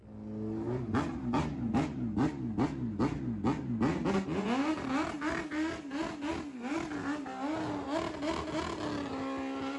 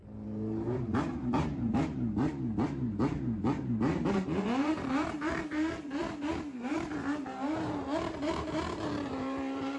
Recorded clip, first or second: first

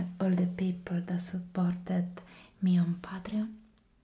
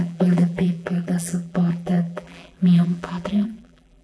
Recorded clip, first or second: first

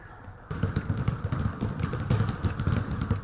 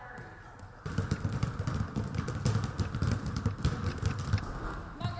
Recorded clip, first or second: second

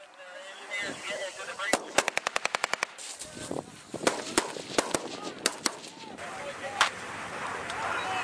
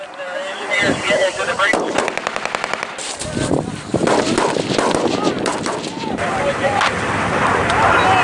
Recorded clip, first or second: first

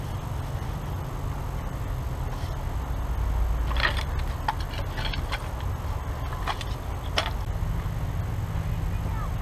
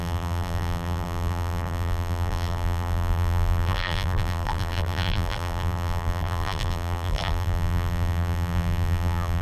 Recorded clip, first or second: first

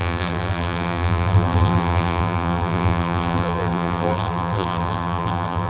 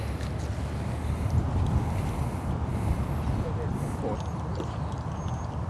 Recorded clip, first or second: second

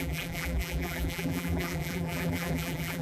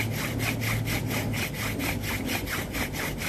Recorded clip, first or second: second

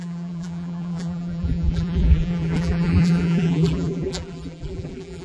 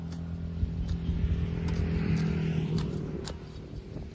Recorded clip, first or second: second